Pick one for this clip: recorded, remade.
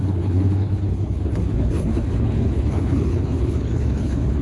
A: remade